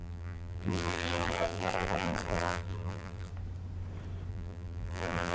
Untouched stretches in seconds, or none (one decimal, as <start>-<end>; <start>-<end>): 3.3-4.3